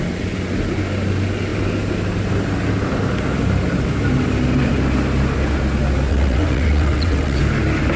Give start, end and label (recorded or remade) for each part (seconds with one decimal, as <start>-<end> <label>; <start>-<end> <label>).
0.0-6.1 recorded; 6.1-7.4 remade; 7.4-8.0 recorded